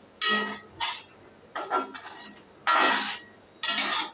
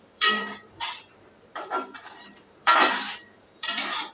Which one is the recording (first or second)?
first